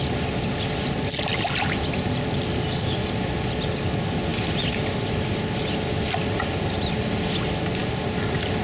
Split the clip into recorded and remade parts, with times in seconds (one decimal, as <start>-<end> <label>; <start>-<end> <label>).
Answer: 0.0-8.6 recorded